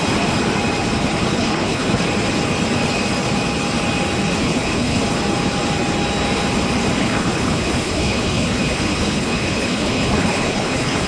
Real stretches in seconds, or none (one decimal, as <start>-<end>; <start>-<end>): 0.0-1.3; 2.0-4.4; 5.0-7.0